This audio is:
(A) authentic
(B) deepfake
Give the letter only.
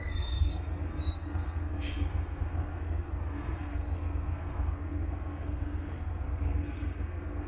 B